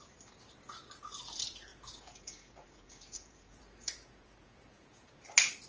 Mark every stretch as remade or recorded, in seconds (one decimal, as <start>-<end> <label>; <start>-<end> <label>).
0.0-1.7 recorded; 1.7-5.1 remade; 5.1-5.7 recorded